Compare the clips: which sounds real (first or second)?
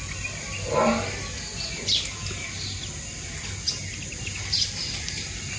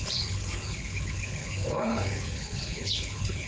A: first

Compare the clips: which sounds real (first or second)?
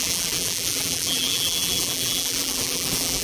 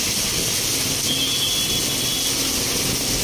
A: second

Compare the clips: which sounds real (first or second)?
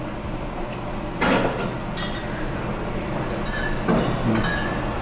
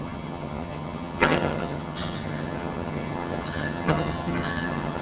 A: first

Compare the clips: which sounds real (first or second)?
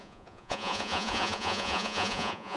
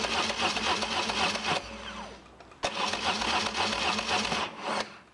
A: second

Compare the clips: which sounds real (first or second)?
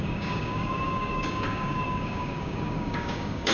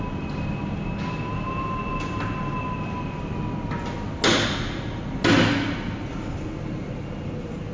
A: second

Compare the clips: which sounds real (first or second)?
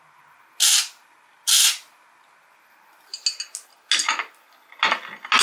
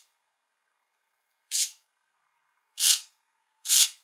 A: first